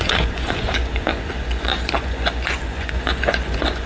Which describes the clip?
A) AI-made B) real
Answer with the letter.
A